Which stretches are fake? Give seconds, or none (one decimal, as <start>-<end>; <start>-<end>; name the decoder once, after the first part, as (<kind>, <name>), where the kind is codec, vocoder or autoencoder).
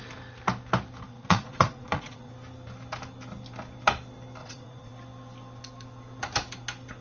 1.1-2.3 (vocoder, Vocos); 4.4-4.9